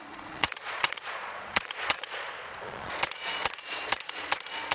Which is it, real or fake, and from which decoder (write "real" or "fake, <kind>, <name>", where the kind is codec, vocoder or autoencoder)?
fake, vocoder, Vocos